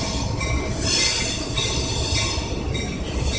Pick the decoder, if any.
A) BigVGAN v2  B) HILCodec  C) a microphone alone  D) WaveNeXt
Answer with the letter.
C